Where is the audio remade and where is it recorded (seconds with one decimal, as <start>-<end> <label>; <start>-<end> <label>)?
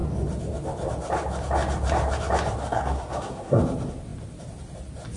0.0-2.6 recorded; 2.6-3.6 remade; 3.6-5.2 recorded